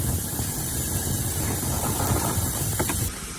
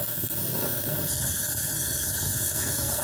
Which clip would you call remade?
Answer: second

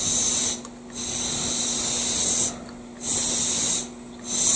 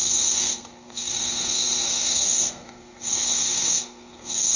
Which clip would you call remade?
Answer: second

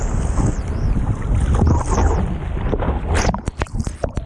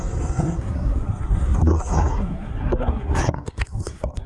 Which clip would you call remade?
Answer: second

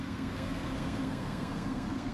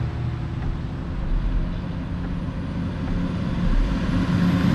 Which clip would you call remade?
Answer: first